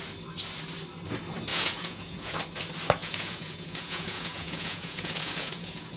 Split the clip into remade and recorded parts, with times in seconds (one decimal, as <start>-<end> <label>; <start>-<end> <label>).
0.0-1.5 recorded; 1.5-2.4 remade; 2.4-3.0 recorded; 3.0-6.0 remade